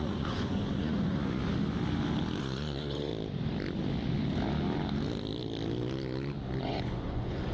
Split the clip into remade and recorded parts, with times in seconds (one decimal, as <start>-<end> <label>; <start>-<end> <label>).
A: 0.0-1.4 remade; 1.4-2.4 recorded; 2.4-3.1 remade; 3.1-6.6 recorded; 6.6-7.5 remade